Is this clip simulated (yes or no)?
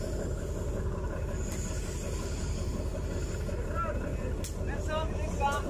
no